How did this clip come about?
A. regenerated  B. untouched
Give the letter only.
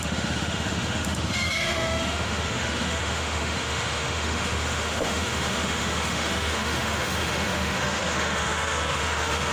A